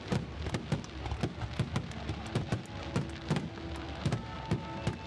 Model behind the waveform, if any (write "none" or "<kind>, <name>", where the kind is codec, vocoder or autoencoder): none